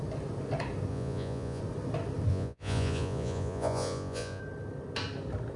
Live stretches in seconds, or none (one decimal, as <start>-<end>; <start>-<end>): 0.0-0.9; 1.6-2.3; 4.4-5.6